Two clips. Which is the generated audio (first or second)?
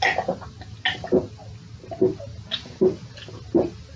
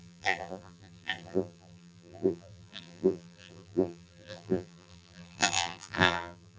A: second